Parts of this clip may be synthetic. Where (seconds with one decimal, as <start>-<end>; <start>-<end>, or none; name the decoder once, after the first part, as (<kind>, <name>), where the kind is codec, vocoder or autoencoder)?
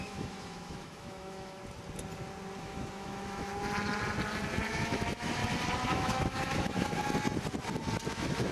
0.0-1.6 (autoencoder, DAC-VAE); 2.6-3.5; 4.7-5.4; 5.9-7.0; 8.1-8.5